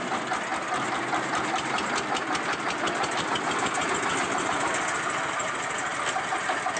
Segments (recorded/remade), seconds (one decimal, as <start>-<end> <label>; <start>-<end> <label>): 0.0-6.8 recorded